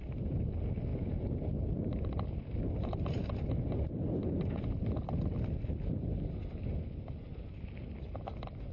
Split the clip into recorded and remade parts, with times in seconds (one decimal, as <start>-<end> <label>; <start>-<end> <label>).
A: 0.0-8.7 recorded